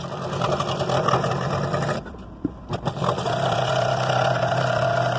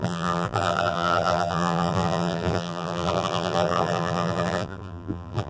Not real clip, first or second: second